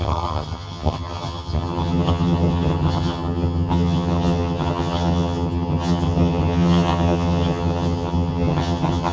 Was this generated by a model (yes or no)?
yes